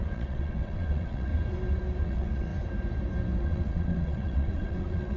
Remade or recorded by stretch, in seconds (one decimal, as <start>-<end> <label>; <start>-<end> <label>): 0.0-1.3 remade; 1.3-2.0 recorded; 2.0-2.5 remade; 2.5-3.4 recorded; 3.4-5.2 remade